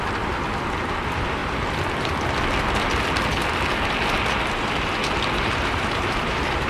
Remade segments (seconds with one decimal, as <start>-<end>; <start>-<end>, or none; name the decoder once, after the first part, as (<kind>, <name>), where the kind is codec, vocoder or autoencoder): 0.0-1.4 (vocoder, BigVGAN v2); 5.4-6.7